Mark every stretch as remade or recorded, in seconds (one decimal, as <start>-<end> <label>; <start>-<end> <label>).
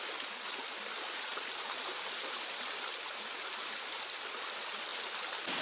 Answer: 0.0-5.6 recorded